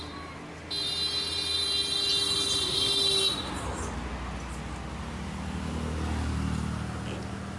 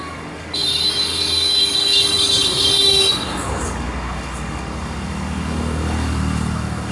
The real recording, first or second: first